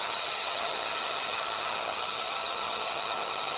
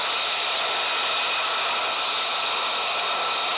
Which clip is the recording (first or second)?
second